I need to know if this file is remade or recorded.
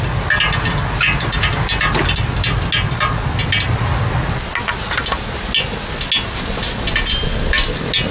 recorded